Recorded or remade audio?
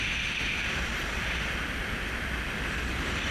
recorded